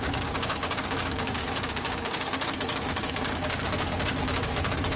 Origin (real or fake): fake